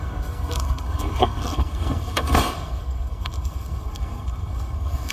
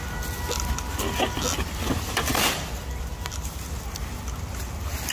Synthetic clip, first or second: first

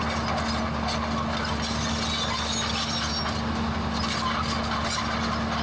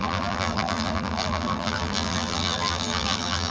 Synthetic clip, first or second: second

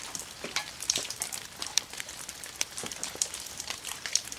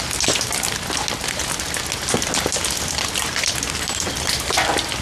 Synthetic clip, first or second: first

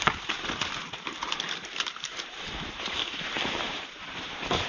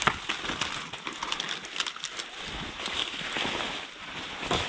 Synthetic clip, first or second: first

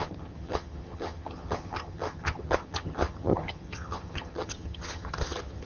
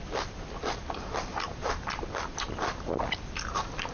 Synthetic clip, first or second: first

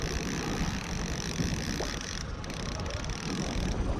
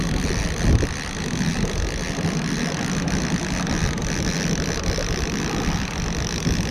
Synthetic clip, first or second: first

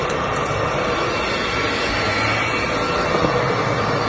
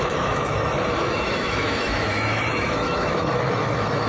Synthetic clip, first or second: second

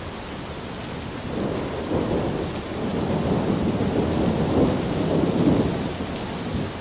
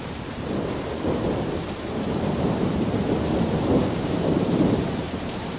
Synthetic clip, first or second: second